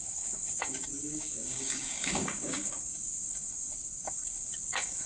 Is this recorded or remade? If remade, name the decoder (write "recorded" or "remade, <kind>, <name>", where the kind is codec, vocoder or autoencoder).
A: remade, codec, DAC